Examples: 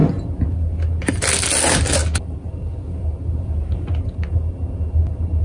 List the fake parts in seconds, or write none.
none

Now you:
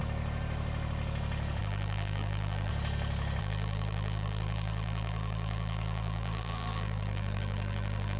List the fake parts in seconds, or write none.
1.6-2.7 (vocoder, BigVGAN v2); 3.4-8.2